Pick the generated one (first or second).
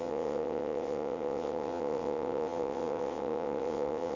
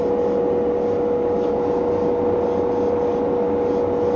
first